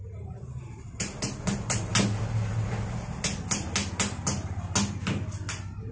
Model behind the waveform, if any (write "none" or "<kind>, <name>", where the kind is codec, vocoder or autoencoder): none